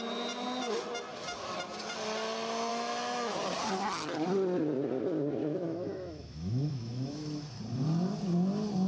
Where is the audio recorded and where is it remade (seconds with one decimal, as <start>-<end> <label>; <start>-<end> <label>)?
0.0-2.7 recorded; 2.7-3.3 remade; 3.3-5.4 recorded; 5.4-7.6 remade; 7.6-8.9 recorded